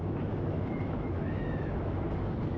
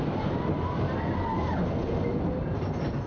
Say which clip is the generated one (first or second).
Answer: first